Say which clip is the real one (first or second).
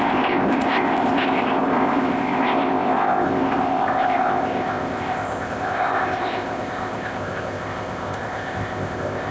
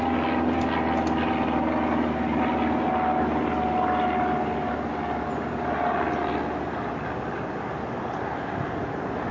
second